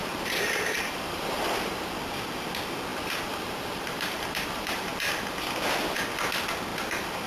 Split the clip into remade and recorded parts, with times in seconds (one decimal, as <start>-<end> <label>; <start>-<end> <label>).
0.0-1.9 remade; 1.9-2.9 recorded; 2.9-4.9 remade; 4.9-6.7 recorded; 6.7-7.3 remade